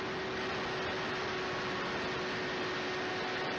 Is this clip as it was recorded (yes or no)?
yes